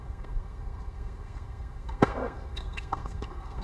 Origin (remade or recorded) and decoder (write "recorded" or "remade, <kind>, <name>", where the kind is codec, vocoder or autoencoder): remade, codec, SNAC